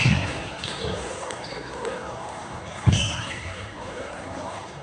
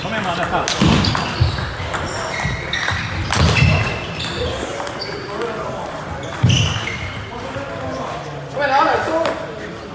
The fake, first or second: first